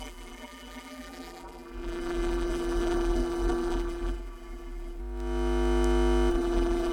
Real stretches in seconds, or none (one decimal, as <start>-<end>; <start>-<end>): 5.0-6.3